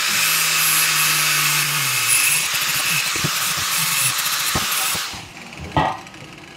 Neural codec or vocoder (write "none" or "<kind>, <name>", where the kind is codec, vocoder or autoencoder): none